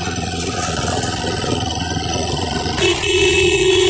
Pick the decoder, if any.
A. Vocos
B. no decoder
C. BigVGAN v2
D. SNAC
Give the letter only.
A